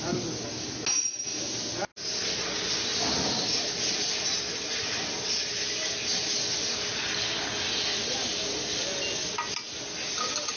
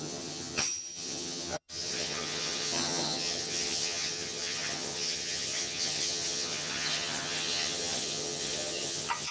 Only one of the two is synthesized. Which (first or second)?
second